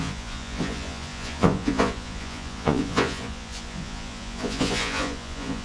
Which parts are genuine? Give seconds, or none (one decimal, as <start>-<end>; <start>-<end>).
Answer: none